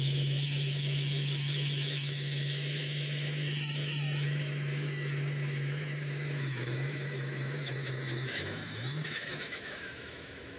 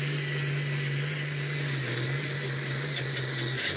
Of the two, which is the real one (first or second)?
second